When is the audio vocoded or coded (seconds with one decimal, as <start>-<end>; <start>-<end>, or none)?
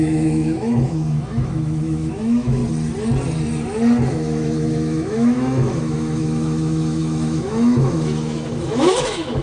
0.0-2.6; 4.1-9.4